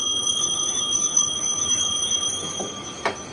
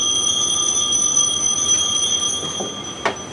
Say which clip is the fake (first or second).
first